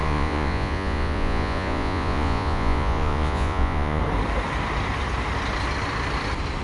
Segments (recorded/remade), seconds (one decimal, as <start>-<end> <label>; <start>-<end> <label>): 0.0-4.0 remade; 4.0-6.6 recorded

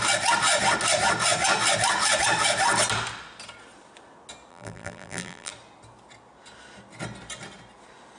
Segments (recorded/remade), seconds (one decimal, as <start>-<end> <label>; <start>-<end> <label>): 0.0-4.5 recorded; 4.5-5.5 remade; 5.5-8.2 recorded

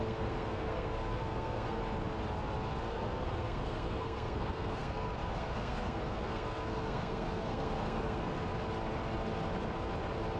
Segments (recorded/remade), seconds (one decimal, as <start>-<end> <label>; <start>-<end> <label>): 0.0-1.8 remade; 1.8-2.9 recorded; 2.9-8.5 remade; 8.5-10.4 recorded

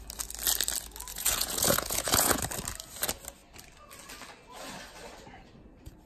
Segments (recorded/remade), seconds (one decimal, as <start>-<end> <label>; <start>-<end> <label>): 0.0-1.1 recorded; 1.1-2.4 remade; 2.4-6.1 recorded

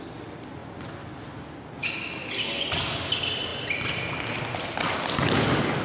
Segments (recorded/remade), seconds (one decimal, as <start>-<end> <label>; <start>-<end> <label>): 0.0-5.8 recorded

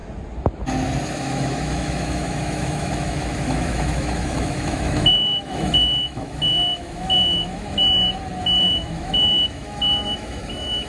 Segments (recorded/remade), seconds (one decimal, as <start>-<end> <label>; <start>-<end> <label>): 0.0-1.1 recorded; 1.1-7.8 remade; 7.8-8.6 recorded; 8.6-10.9 remade